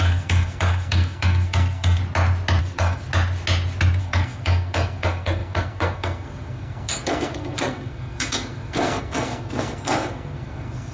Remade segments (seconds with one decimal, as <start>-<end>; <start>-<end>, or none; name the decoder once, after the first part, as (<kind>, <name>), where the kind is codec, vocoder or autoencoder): 0.0-2.0 (codec, SNAC); 2.6-3.1; 4.0-10.9